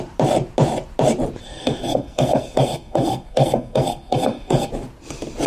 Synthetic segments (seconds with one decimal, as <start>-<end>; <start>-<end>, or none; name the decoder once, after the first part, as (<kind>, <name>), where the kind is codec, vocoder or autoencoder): 1.4-4.7 (codec, SNAC)